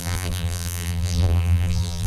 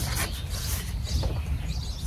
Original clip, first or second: second